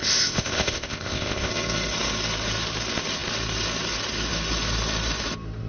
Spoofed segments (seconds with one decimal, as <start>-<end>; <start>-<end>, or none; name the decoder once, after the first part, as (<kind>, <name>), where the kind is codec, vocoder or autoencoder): 0.0-1.5 (codec, ZipCodec)